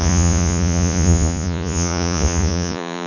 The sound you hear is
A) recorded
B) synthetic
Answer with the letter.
B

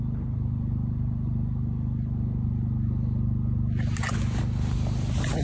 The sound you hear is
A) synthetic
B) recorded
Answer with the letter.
B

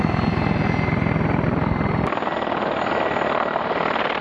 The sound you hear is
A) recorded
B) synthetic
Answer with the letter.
A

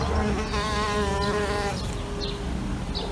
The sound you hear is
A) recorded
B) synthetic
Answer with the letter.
A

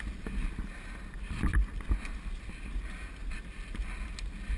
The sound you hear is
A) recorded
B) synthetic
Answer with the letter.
A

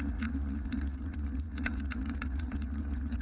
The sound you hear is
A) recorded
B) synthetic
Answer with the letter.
B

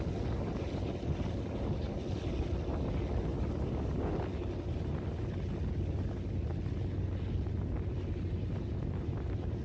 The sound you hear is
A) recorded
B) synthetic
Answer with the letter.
A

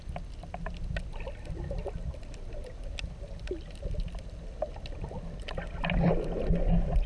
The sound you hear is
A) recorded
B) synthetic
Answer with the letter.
A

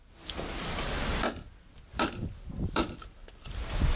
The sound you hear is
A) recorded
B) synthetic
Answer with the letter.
A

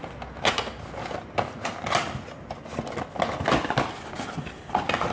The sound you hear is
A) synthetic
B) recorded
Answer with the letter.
B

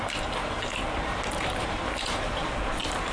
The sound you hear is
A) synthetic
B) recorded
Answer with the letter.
A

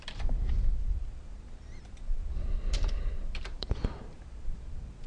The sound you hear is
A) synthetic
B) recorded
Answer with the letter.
A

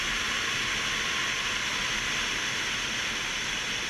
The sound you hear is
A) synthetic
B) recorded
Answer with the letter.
B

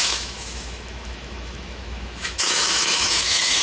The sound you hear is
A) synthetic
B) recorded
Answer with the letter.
A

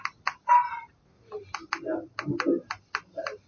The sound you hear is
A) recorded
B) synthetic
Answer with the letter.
A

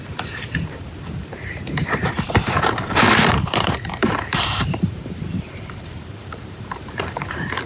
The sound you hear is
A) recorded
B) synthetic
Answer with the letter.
B